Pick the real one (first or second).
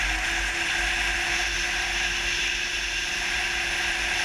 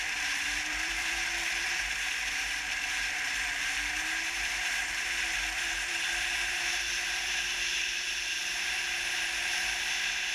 first